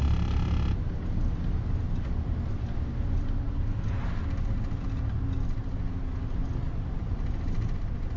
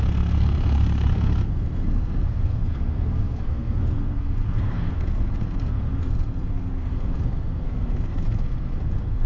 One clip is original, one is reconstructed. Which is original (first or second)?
first